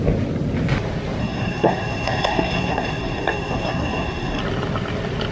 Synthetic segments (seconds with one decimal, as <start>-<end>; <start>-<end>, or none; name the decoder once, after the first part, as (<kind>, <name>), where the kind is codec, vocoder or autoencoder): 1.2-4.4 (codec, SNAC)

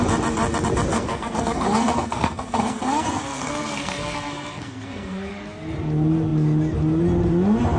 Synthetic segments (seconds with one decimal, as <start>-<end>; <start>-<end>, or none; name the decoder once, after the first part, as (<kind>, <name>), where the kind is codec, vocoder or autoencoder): 0.9-5.3 (codec, SNAC)

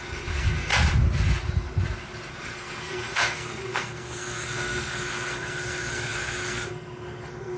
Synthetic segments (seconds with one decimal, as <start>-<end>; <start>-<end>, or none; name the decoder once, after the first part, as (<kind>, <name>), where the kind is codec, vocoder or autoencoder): 0.0-0.7 (codec, SNAC); 2.3-7.6

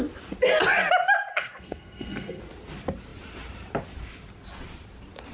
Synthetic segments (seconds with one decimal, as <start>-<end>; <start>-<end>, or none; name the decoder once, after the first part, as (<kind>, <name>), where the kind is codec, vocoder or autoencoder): 1.3-2.4 (codec, SNAC)

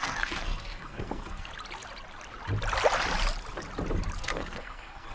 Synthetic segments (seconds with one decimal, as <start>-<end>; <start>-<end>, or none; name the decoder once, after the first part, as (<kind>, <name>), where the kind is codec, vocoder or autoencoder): 0.0-1.5 (codec, SNAC); 4.2-5.1

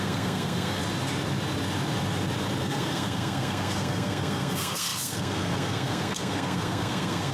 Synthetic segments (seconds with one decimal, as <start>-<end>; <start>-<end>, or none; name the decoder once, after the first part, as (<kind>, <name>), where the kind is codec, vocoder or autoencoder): 0.0-0.8 (codec, SNAC); 2.6-7.3

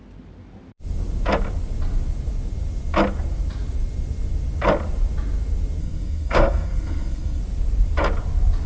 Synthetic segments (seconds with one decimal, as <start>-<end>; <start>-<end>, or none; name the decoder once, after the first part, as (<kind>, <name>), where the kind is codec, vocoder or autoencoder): 5.8-7.4 (codec, SNAC)